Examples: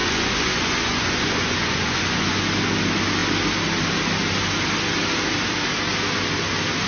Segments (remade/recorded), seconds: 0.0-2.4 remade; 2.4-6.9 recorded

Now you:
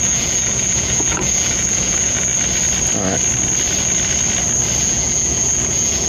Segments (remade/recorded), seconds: 0.0-2.3 remade; 2.3-4.8 recorded; 4.8-6.1 remade

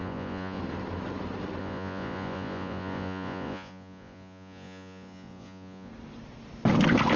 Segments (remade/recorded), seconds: 0.0-0.6 remade; 0.6-1.6 recorded; 1.6-5.9 remade; 5.9-7.2 recorded

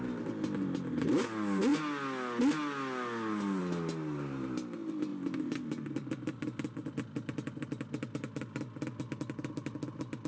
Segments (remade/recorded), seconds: 0.0-10.3 recorded

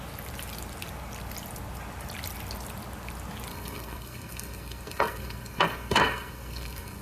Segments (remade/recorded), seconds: 0.0-3.5 recorded; 3.5-7.0 remade

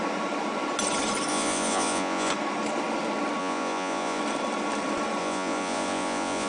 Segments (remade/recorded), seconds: 0.0-1.3 recorded; 1.3-2.3 remade; 2.3-3.4 recorded; 3.4-4.2 remade; 4.2-5.2 recorded; 5.2-6.5 remade

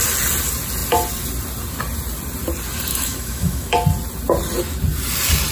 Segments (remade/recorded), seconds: 0.0-2.9 recorded; 2.9-3.7 remade; 3.7-5.5 recorded